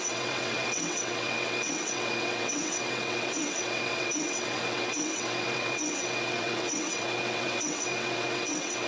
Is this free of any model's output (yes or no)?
no